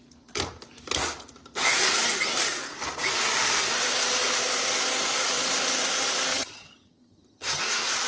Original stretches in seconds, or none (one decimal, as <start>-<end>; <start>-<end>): 0.0-6.3; 7.6-8.1